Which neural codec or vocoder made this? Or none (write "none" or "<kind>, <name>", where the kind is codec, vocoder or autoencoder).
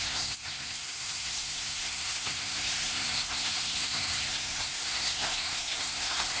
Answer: codec, SNAC